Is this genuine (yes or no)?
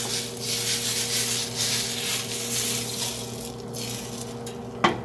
yes